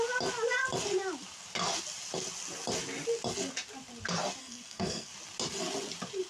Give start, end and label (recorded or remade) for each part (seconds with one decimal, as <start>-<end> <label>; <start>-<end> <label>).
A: 0.0-4.4 recorded; 4.4-5.1 remade; 5.1-6.3 recorded

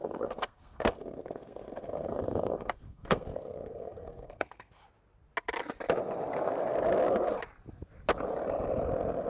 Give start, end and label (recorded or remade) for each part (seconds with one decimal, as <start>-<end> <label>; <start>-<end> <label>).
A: 0.0-4.8 remade; 4.8-9.3 recorded